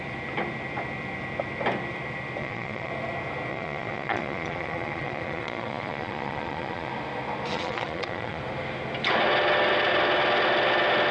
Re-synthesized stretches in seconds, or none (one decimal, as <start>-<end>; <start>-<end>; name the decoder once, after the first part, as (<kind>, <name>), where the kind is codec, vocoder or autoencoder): 2.4-2.9 (vocoder, Vocos); 3.5-6.9; 7.5-8.4